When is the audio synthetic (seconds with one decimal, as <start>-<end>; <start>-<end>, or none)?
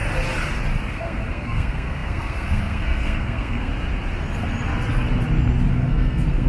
0.9-3.7; 5.7-6.5